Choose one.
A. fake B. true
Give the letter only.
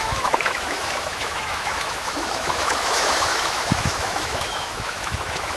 A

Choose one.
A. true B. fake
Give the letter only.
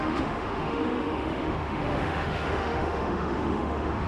B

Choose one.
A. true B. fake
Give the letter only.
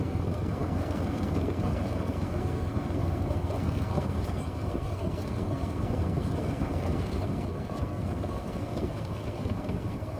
B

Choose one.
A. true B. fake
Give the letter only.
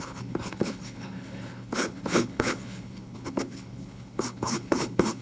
B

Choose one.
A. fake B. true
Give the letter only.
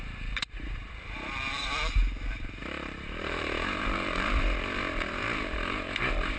A